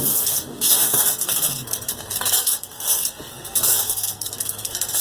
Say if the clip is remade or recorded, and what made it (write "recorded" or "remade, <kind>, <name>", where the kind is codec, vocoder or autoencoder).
remade, codec, SNAC